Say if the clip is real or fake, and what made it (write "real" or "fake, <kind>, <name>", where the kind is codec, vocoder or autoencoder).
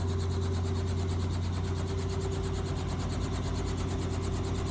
real